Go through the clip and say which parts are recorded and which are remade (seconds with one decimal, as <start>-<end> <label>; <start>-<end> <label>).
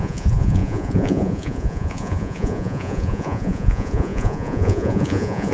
0.0-5.5 remade